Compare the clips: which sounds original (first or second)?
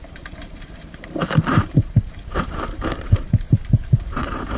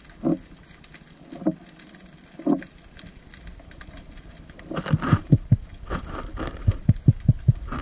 second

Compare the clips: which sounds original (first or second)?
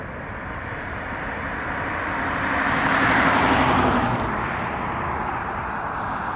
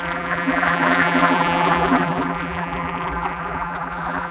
first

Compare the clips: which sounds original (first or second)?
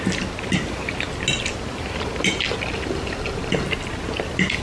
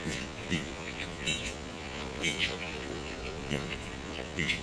first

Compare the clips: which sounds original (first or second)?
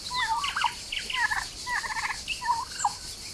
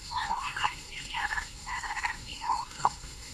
first